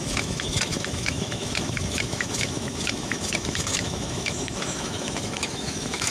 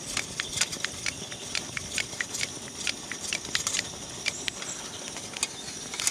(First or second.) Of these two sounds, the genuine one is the second